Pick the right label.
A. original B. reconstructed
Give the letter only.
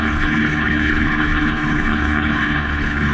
B